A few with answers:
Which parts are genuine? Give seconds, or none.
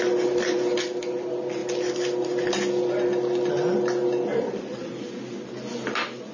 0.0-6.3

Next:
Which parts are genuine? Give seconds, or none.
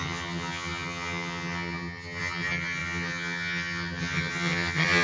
none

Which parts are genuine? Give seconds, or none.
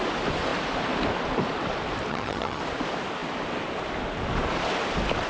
0.0-2.1; 2.6-5.3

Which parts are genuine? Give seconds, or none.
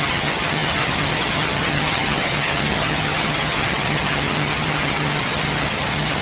none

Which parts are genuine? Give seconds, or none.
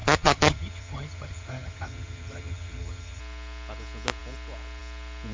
3.2-5.3